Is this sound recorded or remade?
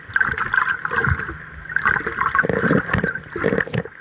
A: recorded